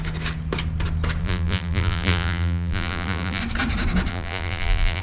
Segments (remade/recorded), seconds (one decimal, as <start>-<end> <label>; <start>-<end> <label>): 0.0-1.2 recorded; 1.2-3.4 remade; 3.4-4.1 recorded; 4.1-5.0 remade